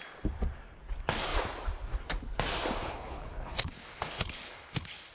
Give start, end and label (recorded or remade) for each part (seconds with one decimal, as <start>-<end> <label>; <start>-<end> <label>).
0.0-2.8 recorded; 2.8-5.1 remade